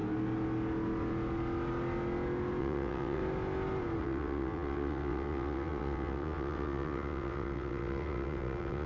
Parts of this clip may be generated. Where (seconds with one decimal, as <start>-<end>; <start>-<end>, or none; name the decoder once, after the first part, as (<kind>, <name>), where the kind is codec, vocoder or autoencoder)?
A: 2.6-3.2 (vocoder, WaveNeXt); 4.0-8.9

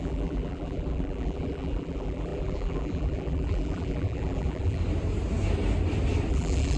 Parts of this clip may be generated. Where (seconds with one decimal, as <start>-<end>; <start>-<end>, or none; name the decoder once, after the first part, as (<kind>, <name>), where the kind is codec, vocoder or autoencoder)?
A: 0.0-4.8 (vocoder, BigVGAN v2); 6.3-6.8

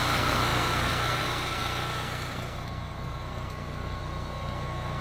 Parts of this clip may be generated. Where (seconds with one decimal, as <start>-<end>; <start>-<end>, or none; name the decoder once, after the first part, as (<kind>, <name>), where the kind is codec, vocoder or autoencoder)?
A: 0.0-5.0 (codec, SNAC)

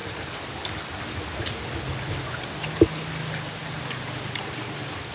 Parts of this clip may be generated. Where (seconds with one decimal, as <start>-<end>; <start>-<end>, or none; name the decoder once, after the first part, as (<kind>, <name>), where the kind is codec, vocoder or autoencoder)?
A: none

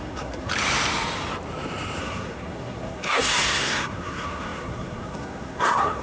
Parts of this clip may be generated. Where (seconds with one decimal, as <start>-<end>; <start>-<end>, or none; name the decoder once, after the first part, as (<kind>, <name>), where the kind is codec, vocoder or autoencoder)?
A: 0.0-0.5 (codec, SNAC); 2.0-6.0